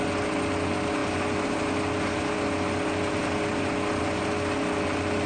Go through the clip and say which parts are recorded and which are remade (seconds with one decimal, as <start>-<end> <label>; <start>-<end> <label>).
0.0-5.3 recorded